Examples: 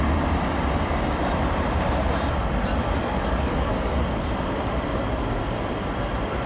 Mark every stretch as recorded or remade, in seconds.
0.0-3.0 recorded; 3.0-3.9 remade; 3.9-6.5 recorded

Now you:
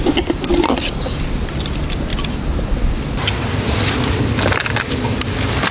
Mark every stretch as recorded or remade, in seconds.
0.0-5.7 recorded

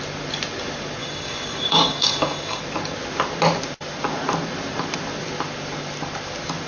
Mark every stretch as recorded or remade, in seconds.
0.0-1.0 recorded; 1.0-2.6 remade; 2.6-6.7 recorded